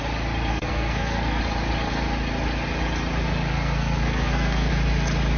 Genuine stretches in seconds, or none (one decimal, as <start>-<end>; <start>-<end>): 0.0-0.5; 1.4-3.5; 4.7-5.4